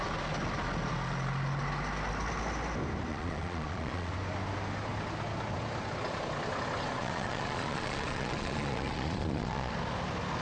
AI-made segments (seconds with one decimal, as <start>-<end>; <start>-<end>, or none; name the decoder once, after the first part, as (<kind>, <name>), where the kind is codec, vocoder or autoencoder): 3.1-4.1 (vocoder, Vocos); 7.0-9.7